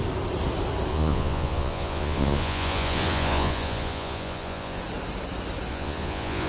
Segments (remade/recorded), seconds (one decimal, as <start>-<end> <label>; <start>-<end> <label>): 0.0-0.9 recorded; 0.9-4.8 remade; 4.8-5.7 recorded; 5.7-6.5 remade